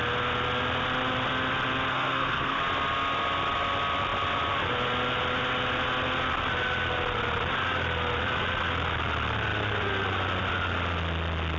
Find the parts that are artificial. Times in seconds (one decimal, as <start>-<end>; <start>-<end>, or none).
1.9-2.6